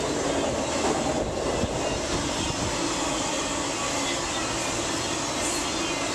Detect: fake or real real